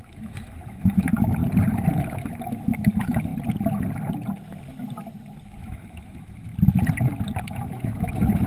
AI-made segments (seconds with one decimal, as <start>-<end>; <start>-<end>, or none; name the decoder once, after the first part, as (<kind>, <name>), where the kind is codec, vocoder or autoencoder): 0.0-1.4 (autoencoder, DAC-VAE); 2.1-3.3; 5.4-6.5; 7.4-8.5